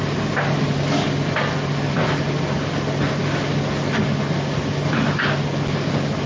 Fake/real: real